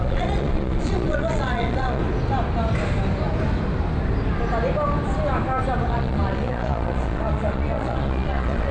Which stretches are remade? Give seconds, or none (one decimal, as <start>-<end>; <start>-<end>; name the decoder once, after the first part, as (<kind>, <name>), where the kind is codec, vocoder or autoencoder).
0.0-2.0 (vocoder, Vocos); 5.9-8.7